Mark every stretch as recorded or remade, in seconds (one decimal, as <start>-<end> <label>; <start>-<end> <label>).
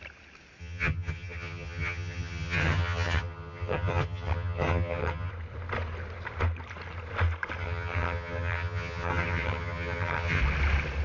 0.0-0.6 recorded; 0.6-5.3 remade; 5.3-7.6 recorded; 7.6-10.4 remade; 10.4-11.0 recorded